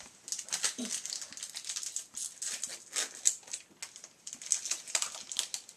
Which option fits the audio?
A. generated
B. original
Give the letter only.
B